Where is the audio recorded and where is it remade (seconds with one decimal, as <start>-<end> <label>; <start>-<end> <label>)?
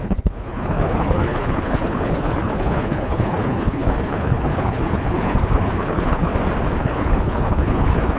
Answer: 0.0-6.3 remade; 6.3-6.8 recorded; 6.8-8.2 remade